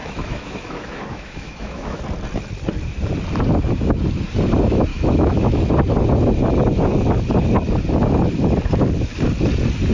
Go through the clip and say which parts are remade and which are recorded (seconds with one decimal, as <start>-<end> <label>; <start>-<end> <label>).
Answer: 0.0-2.0 remade; 2.0-4.9 recorded; 4.9-5.6 remade; 5.6-9.9 recorded